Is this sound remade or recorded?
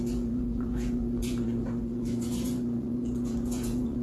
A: remade